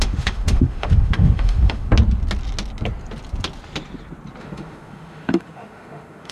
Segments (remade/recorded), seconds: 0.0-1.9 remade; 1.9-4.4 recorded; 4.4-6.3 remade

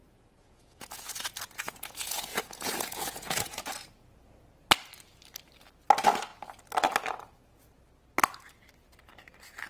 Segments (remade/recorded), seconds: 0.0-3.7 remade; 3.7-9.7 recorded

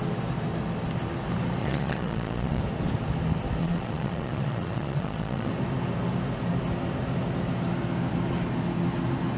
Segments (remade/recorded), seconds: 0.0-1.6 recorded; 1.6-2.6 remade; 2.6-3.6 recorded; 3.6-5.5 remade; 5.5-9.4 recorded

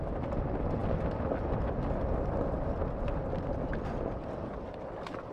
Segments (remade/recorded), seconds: 0.0-5.3 recorded

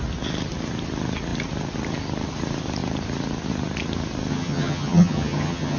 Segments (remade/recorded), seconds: 0.0-4.3 recorded; 4.3-5.8 remade